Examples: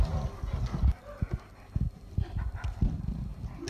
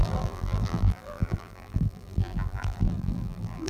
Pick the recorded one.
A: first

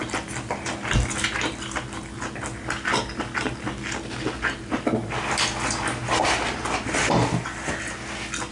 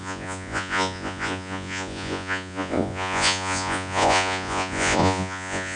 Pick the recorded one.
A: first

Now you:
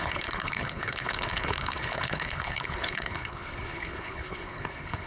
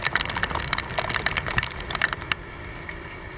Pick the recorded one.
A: second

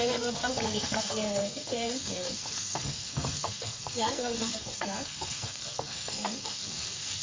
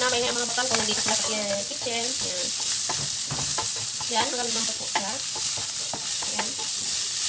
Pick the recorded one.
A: second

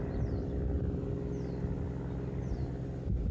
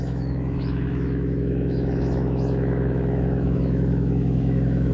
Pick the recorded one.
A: first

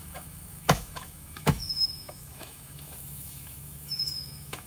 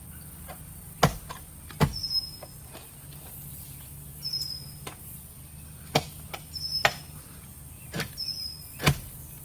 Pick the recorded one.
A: second